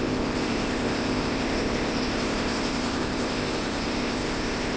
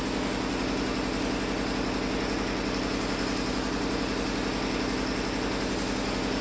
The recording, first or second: second